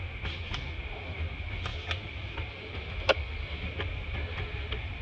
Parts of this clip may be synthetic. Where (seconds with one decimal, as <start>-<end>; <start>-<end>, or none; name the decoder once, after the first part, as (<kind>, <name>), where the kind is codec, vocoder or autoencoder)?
none